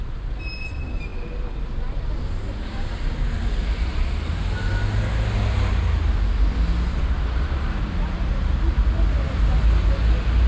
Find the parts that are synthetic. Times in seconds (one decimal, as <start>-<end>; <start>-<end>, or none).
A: none